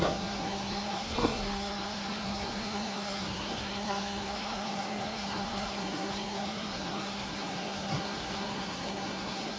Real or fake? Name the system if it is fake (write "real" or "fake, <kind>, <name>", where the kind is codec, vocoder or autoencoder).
fake, codec, SNAC